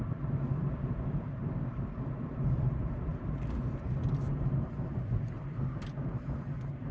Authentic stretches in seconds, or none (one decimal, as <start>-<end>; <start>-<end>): none